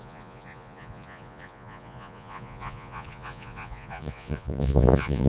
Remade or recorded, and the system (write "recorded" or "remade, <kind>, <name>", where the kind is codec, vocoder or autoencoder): remade, vocoder, Vocos